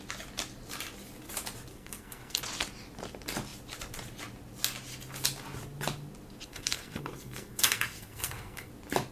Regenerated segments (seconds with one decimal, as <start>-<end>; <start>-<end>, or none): 1.7-2.4; 6.5-8.7